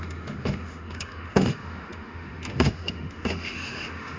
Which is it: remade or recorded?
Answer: remade